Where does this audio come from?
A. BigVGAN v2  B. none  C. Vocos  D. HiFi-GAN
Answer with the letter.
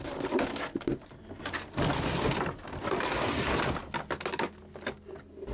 B